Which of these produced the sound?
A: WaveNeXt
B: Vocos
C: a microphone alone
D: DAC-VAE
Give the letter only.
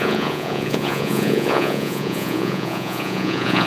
B